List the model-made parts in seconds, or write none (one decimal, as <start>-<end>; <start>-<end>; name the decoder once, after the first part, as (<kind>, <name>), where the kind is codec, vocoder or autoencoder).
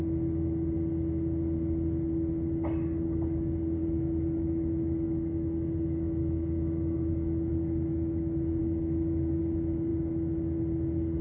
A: 3.8-7.5 (autoencoder, DAC-VAE); 8.6-9.4